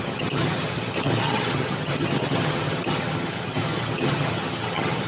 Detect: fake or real fake